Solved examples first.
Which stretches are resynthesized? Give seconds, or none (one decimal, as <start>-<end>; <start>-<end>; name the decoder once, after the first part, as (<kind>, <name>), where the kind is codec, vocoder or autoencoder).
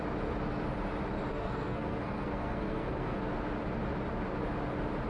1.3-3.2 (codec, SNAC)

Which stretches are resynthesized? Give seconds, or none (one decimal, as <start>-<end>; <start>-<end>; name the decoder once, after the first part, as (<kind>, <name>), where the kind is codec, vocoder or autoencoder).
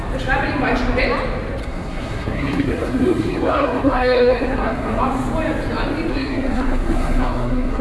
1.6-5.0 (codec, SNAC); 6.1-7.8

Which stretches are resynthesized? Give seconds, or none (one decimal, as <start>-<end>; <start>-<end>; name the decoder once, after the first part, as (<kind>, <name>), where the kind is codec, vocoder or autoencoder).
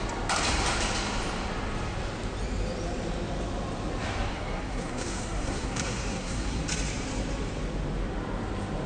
4.3-6.6 (codec, SNAC)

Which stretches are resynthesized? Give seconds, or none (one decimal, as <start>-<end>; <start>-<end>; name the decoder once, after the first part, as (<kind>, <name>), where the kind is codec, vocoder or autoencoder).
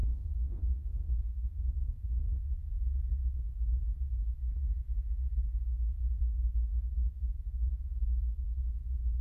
0.0-2.3 (codec, SNAC); 6.2-9.2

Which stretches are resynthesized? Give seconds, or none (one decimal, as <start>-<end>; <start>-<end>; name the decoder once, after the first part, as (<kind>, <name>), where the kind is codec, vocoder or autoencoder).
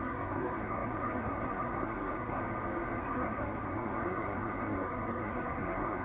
0.0-2.4 (codec, SNAC); 3.0-6.0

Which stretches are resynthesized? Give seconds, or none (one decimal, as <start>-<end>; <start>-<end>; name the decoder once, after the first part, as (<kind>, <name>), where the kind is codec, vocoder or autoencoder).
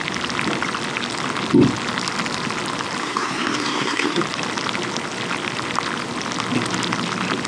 3.0-4.2 (codec, SNAC)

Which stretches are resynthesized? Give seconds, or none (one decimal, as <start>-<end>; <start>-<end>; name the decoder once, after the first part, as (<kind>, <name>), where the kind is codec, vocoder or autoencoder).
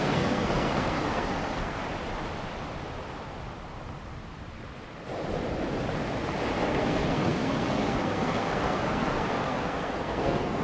0.0-1.8 (codec, SNAC); 6.6-10.6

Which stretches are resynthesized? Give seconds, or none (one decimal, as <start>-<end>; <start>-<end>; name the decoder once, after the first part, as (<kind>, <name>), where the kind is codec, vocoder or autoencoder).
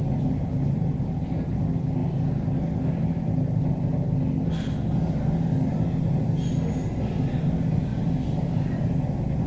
none